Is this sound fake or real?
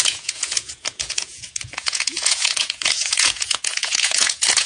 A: fake